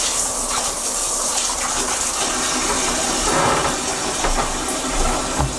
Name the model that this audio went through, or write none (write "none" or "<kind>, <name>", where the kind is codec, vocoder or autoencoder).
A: none